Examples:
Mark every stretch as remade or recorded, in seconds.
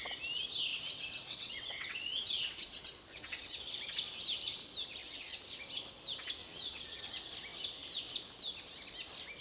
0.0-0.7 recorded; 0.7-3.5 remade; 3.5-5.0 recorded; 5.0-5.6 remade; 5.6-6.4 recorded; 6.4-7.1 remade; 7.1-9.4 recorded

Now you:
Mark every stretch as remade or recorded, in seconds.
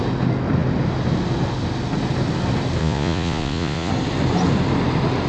0.0-2.8 recorded; 2.8-3.9 remade; 3.9-5.3 recorded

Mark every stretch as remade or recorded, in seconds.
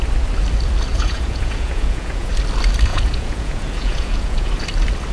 0.0-0.9 recorded; 0.9-2.3 remade; 2.3-2.9 recorded; 2.9-4.5 remade; 4.5-5.1 recorded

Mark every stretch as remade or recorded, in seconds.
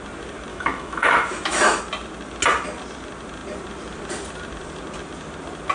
0.0-0.5 recorded; 0.5-1.8 remade; 1.8-5.7 recorded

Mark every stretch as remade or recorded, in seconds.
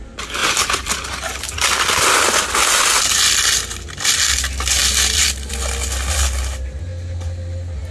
0.0-7.9 recorded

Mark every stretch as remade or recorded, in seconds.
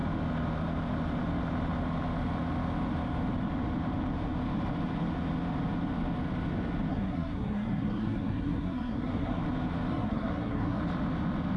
0.0-6.9 recorded; 6.9-9.4 remade; 9.4-9.9 recorded; 9.9-10.8 remade; 10.8-11.6 recorded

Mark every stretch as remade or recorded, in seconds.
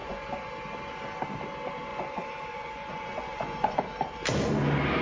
0.0-0.5 remade; 0.5-1.9 recorded; 1.9-3.8 remade; 3.8-5.0 recorded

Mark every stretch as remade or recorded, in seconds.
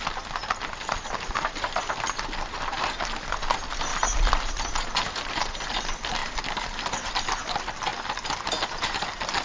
0.0-0.4 recorded; 0.4-2.3 remade; 2.3-3.9 recorded; 3.9-4.5 remade; 4.5-6.2 recorded; 6.2-7.2 remade; 7.2-9.4 recorded